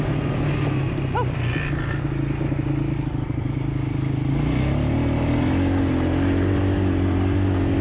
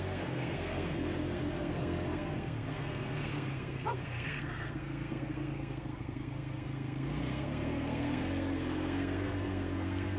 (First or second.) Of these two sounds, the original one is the first